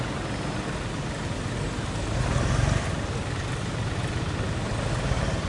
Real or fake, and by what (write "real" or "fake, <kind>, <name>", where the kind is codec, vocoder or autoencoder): real